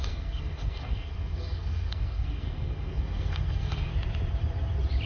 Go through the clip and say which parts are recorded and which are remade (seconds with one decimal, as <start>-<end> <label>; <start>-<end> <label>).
0.0-3.9 remade; 3.9-5.1 recorded